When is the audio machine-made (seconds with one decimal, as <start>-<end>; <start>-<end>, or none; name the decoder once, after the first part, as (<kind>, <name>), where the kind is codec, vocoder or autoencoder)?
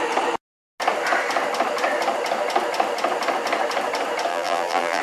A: 4.3-5.0 (vocoder, BigVGAN v2)